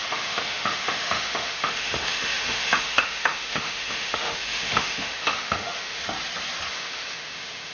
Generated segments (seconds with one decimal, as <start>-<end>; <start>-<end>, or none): 0.0-6.0; 6.7-7.7